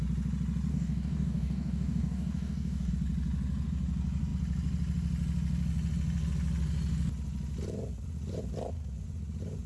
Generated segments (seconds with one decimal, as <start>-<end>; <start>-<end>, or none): 0.7-2.9